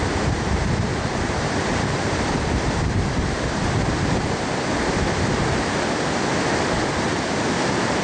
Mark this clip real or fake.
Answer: fake